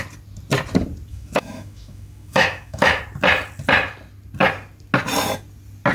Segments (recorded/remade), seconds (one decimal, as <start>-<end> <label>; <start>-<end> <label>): 0.0-1.1 recorded; 1.1-3.0 remade; 3.0-5.9 recorded